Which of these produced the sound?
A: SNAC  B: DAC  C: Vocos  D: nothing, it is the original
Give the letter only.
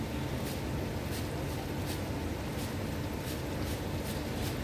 D